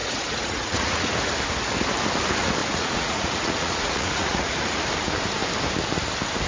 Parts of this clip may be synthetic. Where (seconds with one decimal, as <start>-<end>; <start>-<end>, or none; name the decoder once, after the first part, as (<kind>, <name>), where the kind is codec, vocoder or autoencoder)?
0.0-1.1 (vocoder, Vocos); 2.6-4.8